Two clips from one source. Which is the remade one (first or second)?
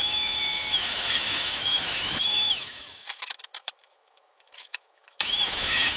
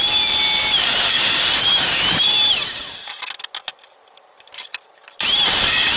first